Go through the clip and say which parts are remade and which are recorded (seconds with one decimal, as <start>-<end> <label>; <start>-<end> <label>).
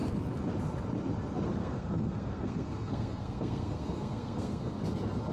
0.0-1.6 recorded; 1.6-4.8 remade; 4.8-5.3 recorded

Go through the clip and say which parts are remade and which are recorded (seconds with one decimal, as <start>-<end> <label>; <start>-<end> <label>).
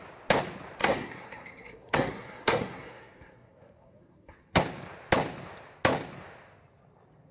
0.0-0.8 recorded; 0.8-4.6 remade; 4.6-7.3 recorded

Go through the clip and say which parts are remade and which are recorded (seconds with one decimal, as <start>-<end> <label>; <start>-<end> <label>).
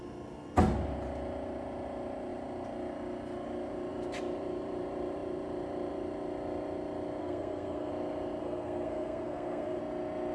0.0-7.2 recorded; 7.2-7.9 remade; 7.9-8.4 recorded; 8.4-9.8 remade; 9.8-10.3 recorded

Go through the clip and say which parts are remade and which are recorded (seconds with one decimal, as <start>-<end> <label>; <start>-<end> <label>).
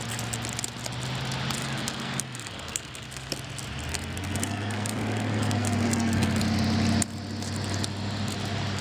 0.0-1.6 recorded; 1.6-3.3 remade; 3.3-3.9 recorded; 3.9-6.4 remade; 6.4-8.8 recorded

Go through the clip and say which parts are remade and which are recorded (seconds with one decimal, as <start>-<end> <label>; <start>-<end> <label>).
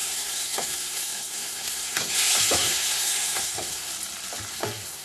0.0-3.9 remade; 3.9-4.5 recorded; 4.5-5.0 remade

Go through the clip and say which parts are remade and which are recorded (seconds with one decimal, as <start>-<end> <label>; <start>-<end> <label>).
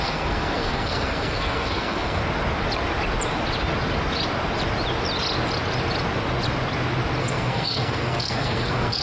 0.0-2.2 remade; 2.2-7.2 recorded; 7.2-9.0 remade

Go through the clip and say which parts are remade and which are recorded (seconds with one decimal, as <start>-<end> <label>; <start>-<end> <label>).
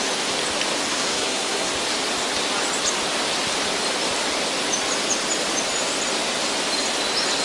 0.0-0.9 recorded; 0.9-1.7 remade; 1.7-7.4 recorded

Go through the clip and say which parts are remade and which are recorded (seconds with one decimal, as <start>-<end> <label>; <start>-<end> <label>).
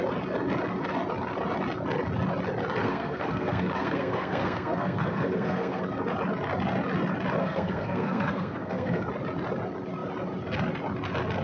0.0-2.8 recorded; 2.8-5.8 remade; 5.8-7.4 recorded; 7.4-9.1 remade; 9.1-11.4 recorded